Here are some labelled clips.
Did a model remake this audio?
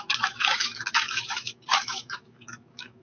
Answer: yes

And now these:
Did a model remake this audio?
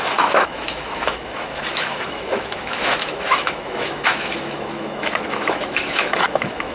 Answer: yes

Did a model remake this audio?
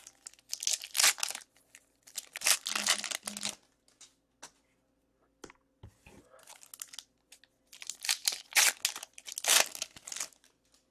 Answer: no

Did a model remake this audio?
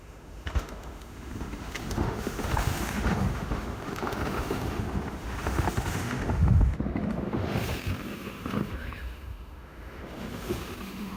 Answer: yes